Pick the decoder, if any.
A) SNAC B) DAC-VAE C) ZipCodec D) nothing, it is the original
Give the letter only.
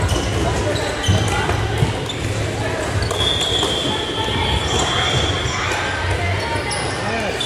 D